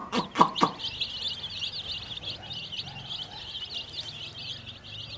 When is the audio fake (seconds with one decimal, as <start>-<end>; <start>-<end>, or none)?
none